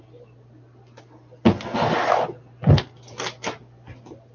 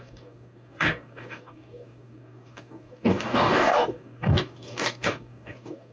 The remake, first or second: second